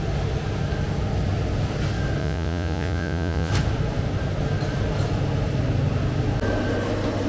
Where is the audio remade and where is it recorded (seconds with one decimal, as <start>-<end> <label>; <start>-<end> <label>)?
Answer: 0.0-2.2 recorded; 2.2-3.5 remade; 3.5-7.3 recorded